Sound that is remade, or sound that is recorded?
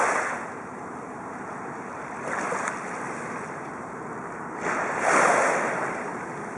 recorded